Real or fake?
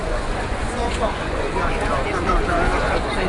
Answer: fake